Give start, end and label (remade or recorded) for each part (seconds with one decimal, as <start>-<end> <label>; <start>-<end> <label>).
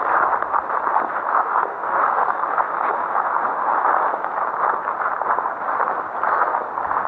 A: 0.0-1.1 recorded; 1.1-3.8 remade; 3.8-7.1 recorded